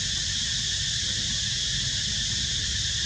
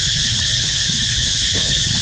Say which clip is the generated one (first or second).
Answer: second